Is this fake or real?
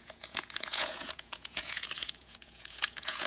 fake